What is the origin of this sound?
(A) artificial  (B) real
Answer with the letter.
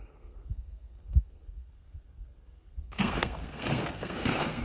A